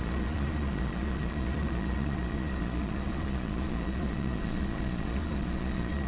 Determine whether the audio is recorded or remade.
remade